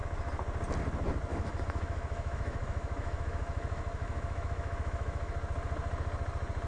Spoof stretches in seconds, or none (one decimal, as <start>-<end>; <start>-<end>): 1.3-5.3